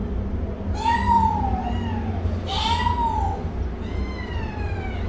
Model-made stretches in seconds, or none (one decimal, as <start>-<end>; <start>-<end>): none